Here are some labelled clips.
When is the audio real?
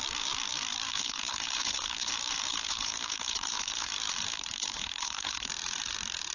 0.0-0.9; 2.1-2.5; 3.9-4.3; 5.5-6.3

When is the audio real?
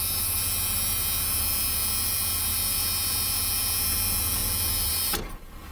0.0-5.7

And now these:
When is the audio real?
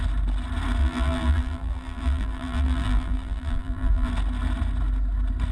0.0-0.8; 4.1-5.5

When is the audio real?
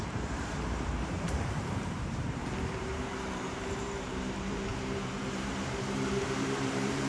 2.4-3.4